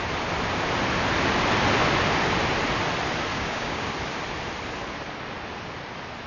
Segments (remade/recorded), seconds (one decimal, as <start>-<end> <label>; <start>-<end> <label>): 0.0-3.3 recorded; 3.3-3.9 remade; 3.9-6.3 recorded